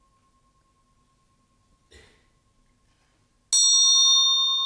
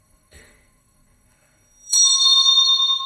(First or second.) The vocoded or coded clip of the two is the second